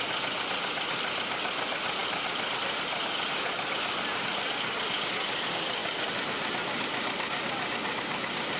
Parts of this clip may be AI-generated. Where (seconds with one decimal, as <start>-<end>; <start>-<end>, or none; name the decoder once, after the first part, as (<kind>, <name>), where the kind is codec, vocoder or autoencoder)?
none